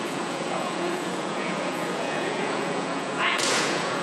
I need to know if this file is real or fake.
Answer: fake